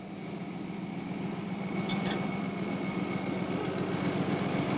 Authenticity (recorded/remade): recorded